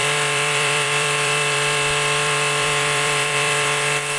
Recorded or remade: remade